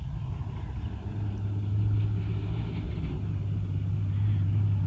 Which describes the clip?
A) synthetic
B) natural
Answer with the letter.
B